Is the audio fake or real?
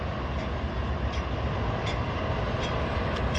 real